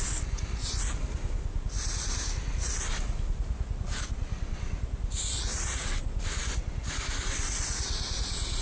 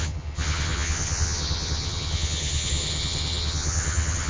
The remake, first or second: second